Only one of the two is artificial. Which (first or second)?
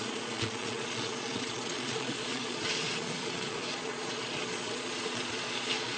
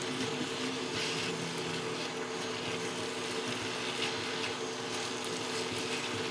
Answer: first